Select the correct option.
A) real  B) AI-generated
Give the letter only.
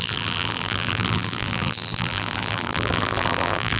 B